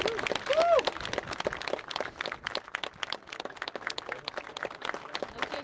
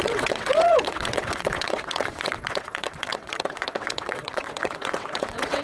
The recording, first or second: first